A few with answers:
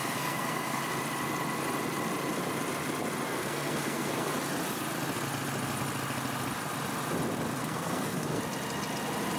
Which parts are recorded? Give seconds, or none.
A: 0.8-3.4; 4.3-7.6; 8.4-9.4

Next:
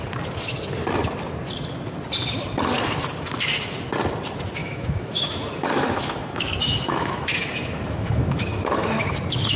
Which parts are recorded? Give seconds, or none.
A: 0.0-4.6; 9.0-9.6

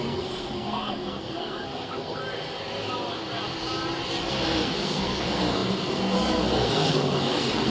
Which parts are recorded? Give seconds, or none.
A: 2.2-4.3

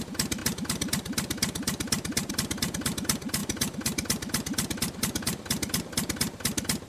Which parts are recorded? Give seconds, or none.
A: 0.0-6.9

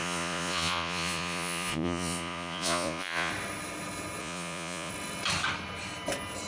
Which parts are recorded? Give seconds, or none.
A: 3.3-4.2; 4.9-6.5

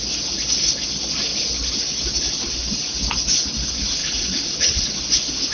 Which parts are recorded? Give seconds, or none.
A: 0.0-4.0; 4.9-5.5

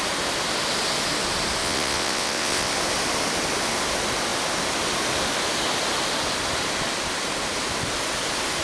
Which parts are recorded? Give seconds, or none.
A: 0.0-1.6; 2.7-8.6

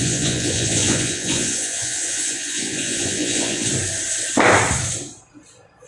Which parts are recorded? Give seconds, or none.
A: 3.7-5.9